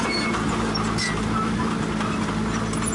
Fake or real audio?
real